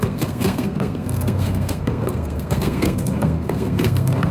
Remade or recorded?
remade